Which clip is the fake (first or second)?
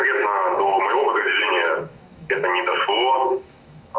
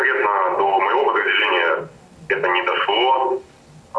first